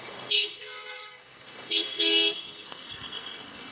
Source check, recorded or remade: remade